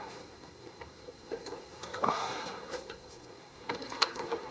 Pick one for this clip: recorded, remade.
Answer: remade